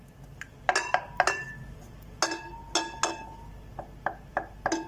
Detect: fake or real real